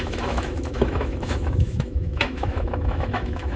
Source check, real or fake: fake